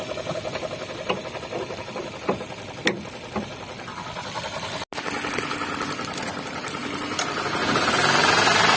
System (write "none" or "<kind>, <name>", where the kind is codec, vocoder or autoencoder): none